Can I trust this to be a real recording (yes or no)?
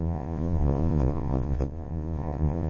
no